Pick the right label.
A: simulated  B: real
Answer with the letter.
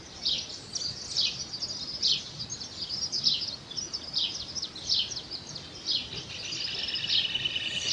B